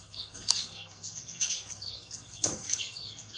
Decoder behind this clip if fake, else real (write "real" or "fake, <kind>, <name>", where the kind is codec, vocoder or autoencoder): fake, codec, SNAC